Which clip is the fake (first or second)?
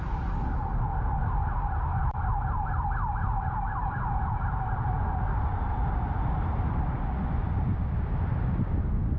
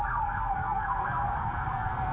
second